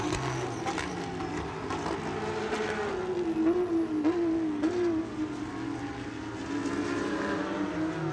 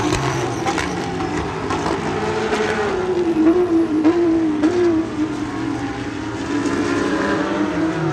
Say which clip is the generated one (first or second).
second